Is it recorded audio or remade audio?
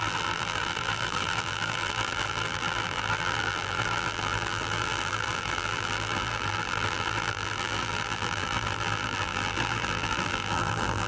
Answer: remade